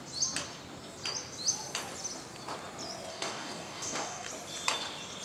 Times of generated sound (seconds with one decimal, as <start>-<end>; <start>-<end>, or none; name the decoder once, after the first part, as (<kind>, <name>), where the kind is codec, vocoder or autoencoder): 3.1-4.3 (codec, DAC)